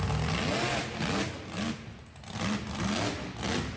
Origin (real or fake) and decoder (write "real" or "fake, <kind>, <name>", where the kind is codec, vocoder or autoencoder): real